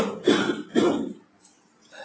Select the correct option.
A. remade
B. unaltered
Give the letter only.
B